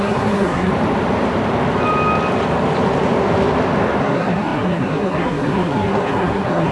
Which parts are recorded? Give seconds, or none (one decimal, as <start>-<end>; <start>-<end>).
0.7-4.0